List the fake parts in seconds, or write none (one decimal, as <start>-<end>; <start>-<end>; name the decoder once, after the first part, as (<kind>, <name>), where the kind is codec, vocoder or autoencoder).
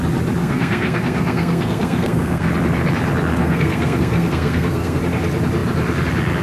0.4-2.5 (codec, SNAC); 3.4-5.0